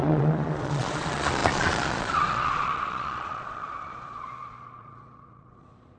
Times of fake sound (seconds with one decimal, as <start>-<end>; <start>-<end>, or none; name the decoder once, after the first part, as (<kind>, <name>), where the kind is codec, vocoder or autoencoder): 0.0-6.0 (vocoder, Vocos)